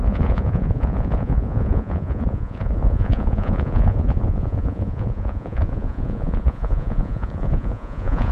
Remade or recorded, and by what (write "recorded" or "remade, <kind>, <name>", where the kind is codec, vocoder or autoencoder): remade, vocoder, Vocos